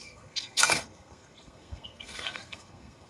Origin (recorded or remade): remade